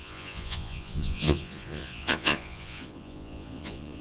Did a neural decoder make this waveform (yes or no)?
yes